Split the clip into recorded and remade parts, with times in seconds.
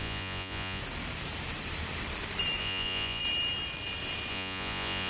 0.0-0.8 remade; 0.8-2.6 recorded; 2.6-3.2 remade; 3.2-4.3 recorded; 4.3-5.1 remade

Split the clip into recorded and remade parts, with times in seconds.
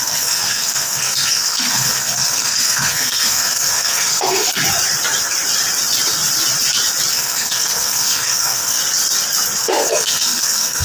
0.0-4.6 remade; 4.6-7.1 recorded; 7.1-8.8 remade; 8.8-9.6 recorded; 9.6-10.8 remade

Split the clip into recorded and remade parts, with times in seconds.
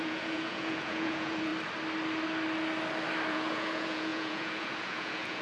0.0-1.5 remade; 1.5-3.3 recorded; 3.3-5.4 remade